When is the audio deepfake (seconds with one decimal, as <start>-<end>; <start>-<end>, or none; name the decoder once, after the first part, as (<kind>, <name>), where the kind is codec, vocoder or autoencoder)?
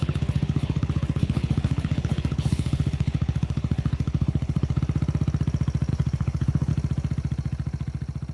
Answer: 0.0-4.8 (codec, HILCodec); 5.9-6.7